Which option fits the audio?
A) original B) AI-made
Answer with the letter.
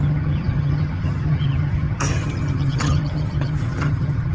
B